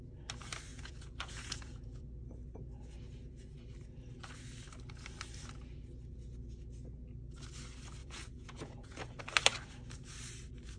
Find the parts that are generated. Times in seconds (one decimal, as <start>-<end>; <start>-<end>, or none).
0.7-2.0; 8.0-9.2